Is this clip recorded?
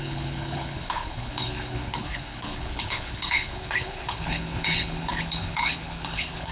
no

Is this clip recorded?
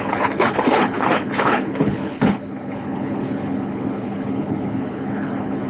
no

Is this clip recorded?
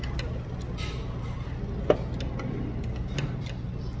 yes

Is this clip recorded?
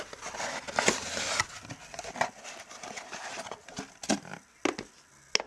yes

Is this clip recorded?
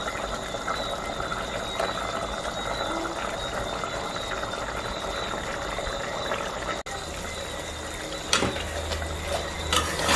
yes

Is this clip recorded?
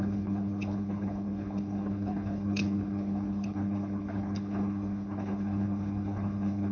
no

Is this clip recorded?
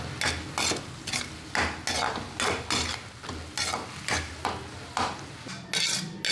yes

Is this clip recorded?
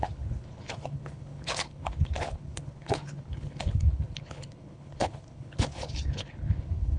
no